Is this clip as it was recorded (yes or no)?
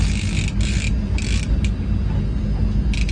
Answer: yes